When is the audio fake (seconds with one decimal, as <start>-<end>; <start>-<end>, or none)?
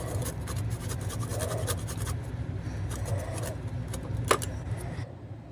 none